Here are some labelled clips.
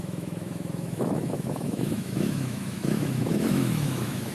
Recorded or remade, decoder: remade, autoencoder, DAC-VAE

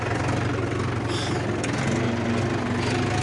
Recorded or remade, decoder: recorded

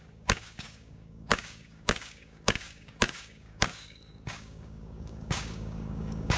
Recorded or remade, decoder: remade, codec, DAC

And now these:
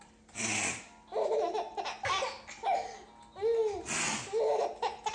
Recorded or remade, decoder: recorded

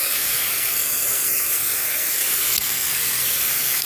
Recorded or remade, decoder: remade, codec, SNAC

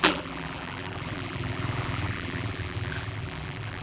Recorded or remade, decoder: remade, vocoder, BigVGAN v2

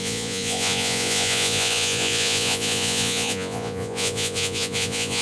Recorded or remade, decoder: remade, vocoder, Vocos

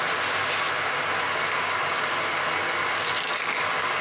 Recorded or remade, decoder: recorded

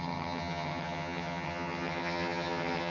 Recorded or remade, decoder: remade, vocoder, HiFi-GAN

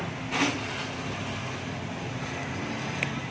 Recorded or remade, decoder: recorded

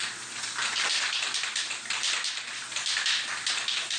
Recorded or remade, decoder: recorded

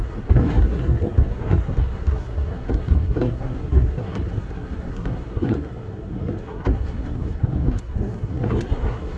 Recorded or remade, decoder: remade, codec, SNAC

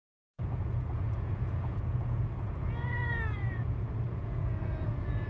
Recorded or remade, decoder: remade, vocoder, Vocos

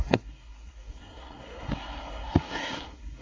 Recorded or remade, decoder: remade, codec, SNAC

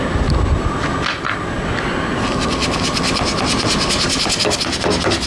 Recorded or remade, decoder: recorded